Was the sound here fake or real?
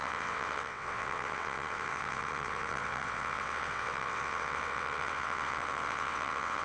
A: fake